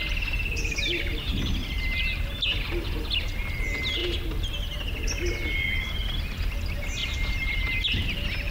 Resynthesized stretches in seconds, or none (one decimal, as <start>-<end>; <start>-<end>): 1.3-2.3; 7.0-7.7

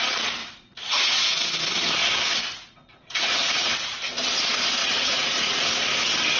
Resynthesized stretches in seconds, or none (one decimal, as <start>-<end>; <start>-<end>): 0.4-1.4; 2.9-4.0; 4.8-5.6

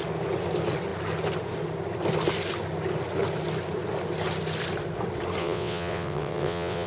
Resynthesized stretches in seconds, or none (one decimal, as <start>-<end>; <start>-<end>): 5.4-6.9

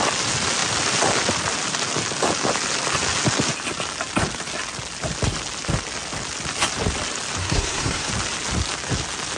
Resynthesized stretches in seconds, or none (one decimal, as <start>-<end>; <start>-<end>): 7.4-8.1